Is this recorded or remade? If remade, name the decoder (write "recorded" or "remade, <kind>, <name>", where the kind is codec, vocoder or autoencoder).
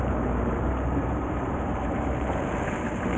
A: remade, vocoder, BigVGAN v2